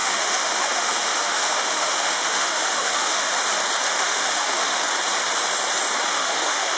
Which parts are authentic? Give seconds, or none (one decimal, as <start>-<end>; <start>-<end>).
3.3-3.9; 4.8-6.1